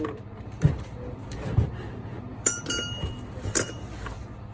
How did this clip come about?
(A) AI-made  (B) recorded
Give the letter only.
B